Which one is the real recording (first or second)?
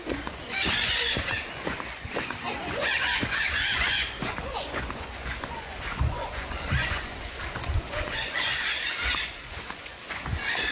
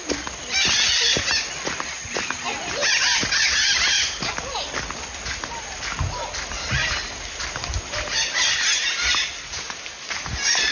second